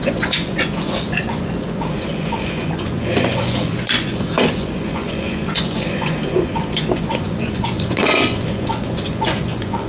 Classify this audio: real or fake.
fake